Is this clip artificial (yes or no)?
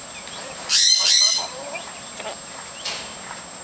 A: yes